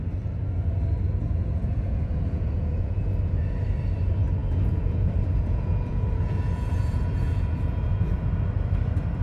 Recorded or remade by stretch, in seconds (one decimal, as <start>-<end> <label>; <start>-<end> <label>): 0.0-1.2 recorded; 1.2-3.1 remade; 3.1-4.4 recorded; 4.4-8.3 remade; 8.3-9.2 recorded